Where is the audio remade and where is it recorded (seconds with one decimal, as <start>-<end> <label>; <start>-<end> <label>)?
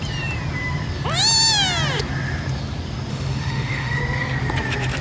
0.0-3.1 recorded; 3.1-4.0 remade; 4.0-5.0 recorded